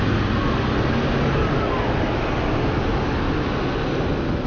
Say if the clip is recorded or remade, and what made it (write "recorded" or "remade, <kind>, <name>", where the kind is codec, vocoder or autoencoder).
recorded